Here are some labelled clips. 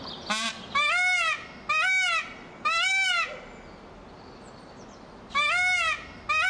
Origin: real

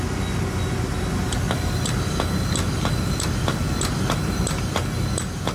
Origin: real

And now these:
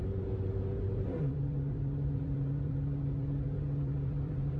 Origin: fake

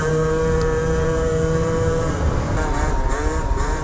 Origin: fake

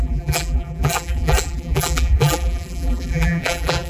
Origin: fake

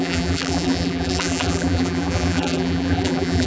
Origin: fake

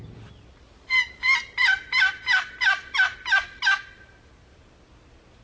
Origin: real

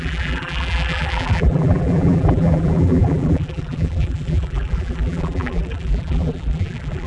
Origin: fake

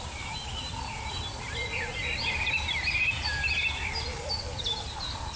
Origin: fake